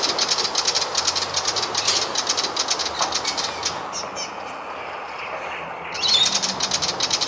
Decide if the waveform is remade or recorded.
recorded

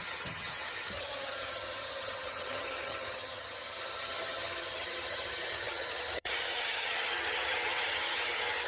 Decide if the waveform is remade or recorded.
remade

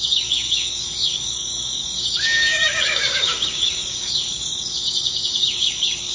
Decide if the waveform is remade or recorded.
remade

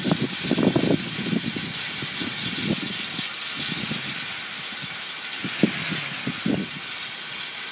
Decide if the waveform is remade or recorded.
recorded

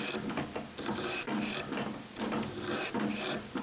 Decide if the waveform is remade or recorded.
recorded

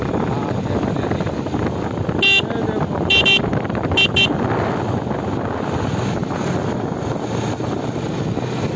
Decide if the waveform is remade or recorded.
recorded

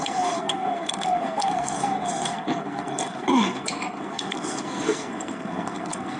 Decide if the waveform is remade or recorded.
remade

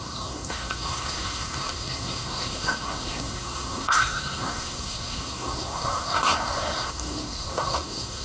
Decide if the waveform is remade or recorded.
remade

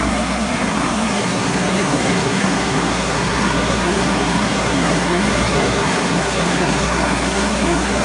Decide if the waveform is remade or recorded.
remade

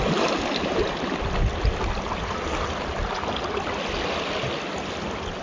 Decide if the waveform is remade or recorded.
recorded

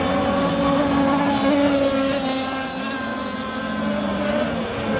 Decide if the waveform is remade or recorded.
recorded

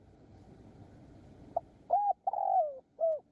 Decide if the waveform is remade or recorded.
recorded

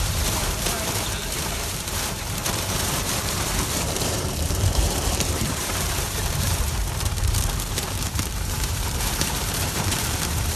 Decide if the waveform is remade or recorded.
remade